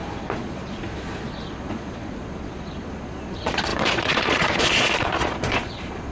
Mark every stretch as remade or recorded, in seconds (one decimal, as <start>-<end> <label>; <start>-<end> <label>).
0.0-6.1 remade